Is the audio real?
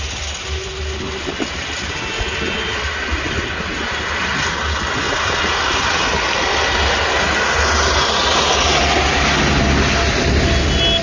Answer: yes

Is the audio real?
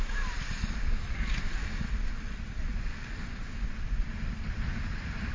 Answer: yes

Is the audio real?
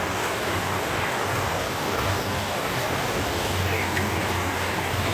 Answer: no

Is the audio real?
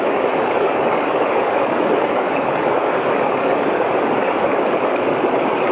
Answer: no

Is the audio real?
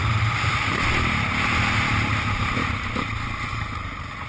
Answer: yes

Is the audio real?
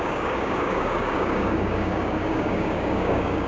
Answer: no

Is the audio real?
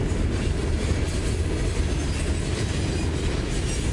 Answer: yes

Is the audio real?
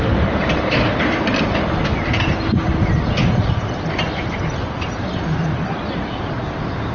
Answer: yes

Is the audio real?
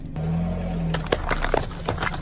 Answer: yes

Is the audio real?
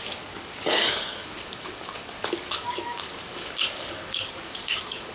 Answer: no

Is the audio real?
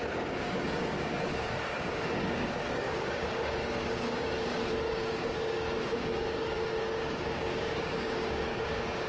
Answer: no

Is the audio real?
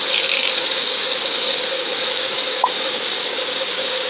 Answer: no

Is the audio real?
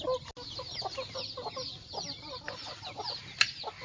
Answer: yes